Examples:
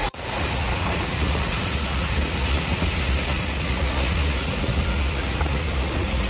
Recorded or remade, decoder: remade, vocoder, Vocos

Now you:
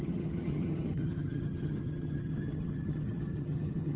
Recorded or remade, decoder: remade, vocoder, HiFi-GAN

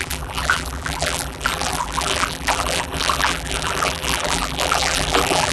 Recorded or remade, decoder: remade, vocoder, BigVGAN v2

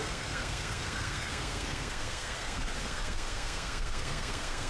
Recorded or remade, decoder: remade, codec, SNAC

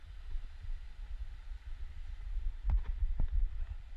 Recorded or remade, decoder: remade, vocoder, BigVGAN v2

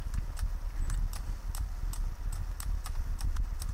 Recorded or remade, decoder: recorded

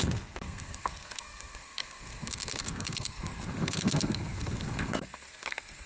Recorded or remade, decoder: remade, codec, SNAC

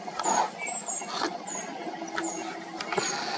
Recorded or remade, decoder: recorded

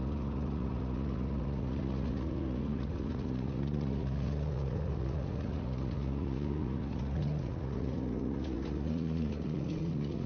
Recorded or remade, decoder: remade, vocoder, Vocos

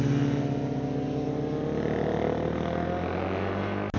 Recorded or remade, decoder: recorded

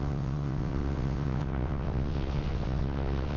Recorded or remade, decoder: remade, vocoder, WaveNeXt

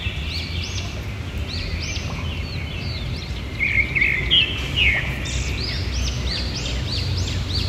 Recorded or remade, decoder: recorded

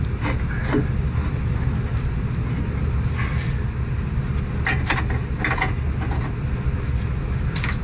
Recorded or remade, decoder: recorded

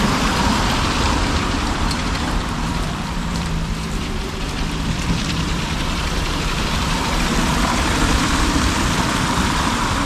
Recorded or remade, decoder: remade, vocoder, BigVGAN v2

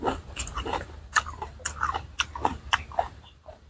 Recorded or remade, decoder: remade, vocoder, BigVGAN v2